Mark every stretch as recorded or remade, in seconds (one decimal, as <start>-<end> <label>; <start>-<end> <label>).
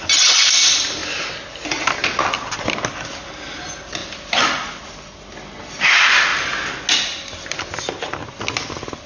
0.0-9.1 recorded